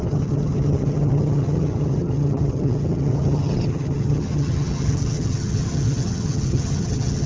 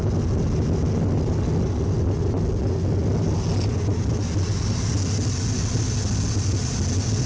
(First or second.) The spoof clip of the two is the first